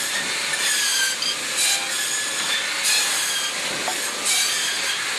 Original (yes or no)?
yes